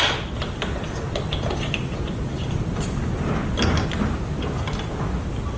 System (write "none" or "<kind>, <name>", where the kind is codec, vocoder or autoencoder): none